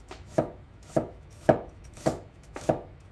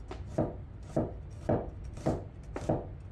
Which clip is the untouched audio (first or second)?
second